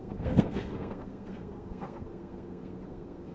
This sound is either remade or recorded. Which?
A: remade